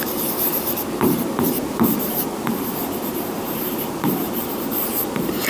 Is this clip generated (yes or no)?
yes